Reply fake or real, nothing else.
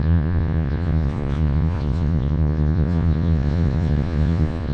fake